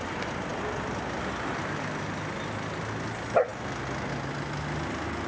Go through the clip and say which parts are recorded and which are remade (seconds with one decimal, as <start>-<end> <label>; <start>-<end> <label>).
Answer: 0.0-5.3 recorded